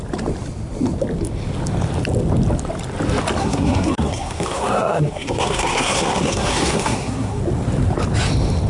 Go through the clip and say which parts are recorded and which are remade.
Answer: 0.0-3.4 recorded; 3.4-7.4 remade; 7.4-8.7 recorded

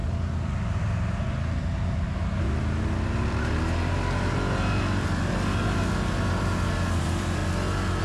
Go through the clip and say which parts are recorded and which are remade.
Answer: 0.0-1.6 recorded; 1.6-2.2 remade; 2.2-7.0 recorded; 7.0-7.4 remade; 7.4-8.0 recorded

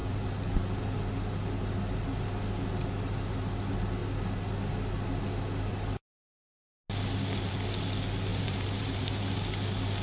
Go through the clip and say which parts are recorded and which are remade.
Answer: 0.0-0.8 remade; 0.8-8.3 recorded; 8.3-9.2 remade; 9.2-10.0 recorded

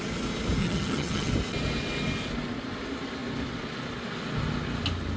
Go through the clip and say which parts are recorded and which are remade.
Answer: 0.0-0.6 recorded; 0.6-1.3 remade; 1.3-5.2 recorded

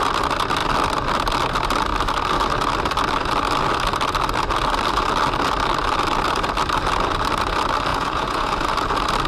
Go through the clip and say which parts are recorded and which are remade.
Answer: 0.0-7.9 recorded; 7.9-8.5 remade; 8.5-9.3 recorded